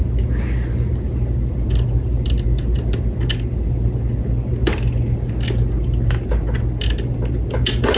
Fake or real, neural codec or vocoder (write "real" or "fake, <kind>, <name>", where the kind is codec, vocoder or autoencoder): real